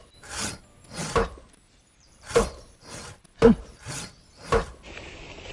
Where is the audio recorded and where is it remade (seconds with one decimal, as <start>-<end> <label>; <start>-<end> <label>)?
0.0-1.0 recorded; 1.0-4.3 remade; 4.3-5.5 recorded